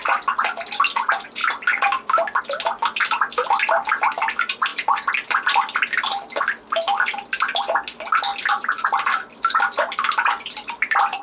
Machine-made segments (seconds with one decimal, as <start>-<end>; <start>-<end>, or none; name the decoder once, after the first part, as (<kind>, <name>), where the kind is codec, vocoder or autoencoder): 4.7-6.4 (vocoder, BigVGAN v2); 8.3-11.2